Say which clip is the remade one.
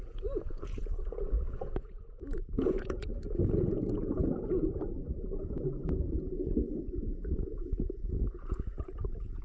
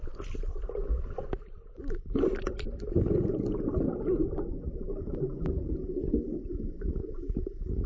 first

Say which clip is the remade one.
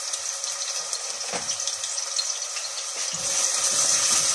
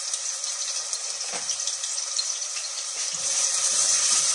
second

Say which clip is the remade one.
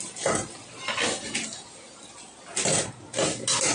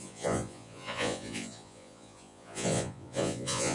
second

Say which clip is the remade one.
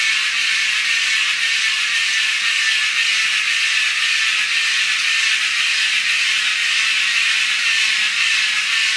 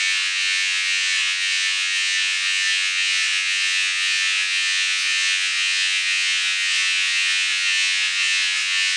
second